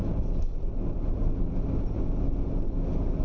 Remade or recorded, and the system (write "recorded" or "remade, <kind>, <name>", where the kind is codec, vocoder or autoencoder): recorded